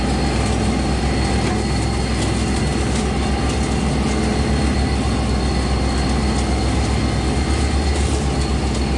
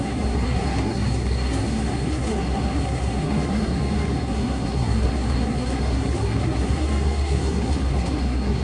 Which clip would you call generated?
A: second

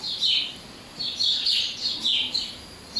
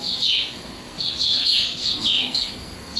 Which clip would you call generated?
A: second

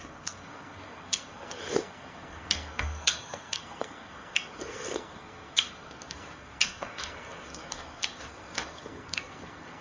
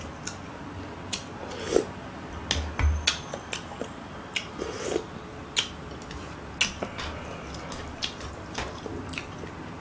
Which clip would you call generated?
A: first